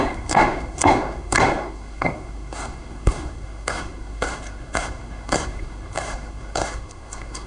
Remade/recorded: remade